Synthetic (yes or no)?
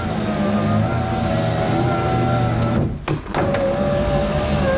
no